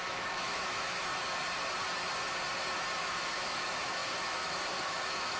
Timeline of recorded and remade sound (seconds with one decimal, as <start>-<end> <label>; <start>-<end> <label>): 0.0-1.1 remade; 1.1-3.0 recorded; 3.0-5.4 remade

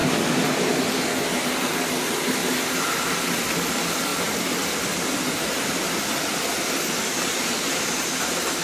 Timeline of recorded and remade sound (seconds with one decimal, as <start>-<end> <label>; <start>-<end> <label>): 0.0-0.8 remade; 0.8-2.4 recorded; 2.4-3.4 remade; 3.4-4.1 recorded; 4.1-8.2 remade; 8.2-8.6 recorded

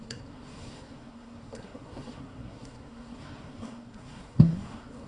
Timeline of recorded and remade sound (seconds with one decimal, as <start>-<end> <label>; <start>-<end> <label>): 0.0-5.1 remade

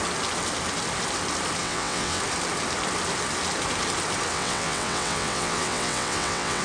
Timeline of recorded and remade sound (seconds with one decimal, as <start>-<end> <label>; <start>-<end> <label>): 0.0-1.6 recorded; 1.6-2.2 remade; 2.2-4.3 recorded; 4.3-6.6 remade

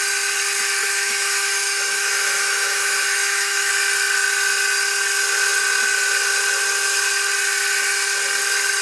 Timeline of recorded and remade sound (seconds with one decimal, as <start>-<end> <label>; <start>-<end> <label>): 0.0-0.8 recorded; 0.8-3.7 remade; 3.7-8.8 recorded

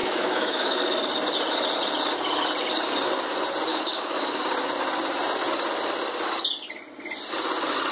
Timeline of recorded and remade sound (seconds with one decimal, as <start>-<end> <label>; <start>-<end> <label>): 0.0-0.8 remade; 0.8-3.7 recorded; 3.7-4.4 remade; 4.4-7.9 recorded

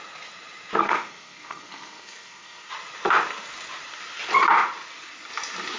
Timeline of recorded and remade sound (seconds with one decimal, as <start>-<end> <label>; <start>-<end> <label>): 0.0-0.8 recorded; 0.8-2.7 remade; 2.7-5.8 recorded

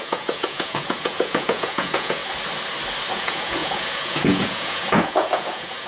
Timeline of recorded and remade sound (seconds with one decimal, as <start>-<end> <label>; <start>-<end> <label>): 0.0-2.2 remade; 2.2-3.1 recorded; 3.1-5.9 remade